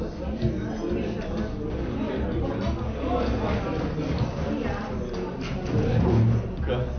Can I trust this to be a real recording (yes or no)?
yes